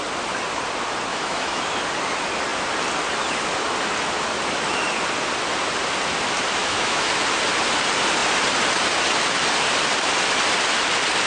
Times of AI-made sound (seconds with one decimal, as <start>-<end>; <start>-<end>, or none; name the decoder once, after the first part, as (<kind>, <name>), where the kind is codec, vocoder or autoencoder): 1.1-1.6 (autoencoder, DAC-VAE); 6.6-7.2